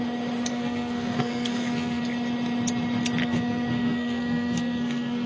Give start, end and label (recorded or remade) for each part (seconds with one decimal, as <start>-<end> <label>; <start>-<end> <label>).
0.0-0.5 recorded; 0.5-2.0 remade; 2.0-3.2 recorded; 3.2-5.3 remade